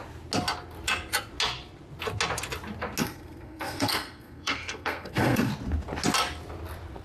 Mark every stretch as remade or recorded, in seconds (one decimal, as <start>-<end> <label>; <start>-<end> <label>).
0.0-3.0 recorded; 3.0-5.5 remade; 5.5-7.0 recorded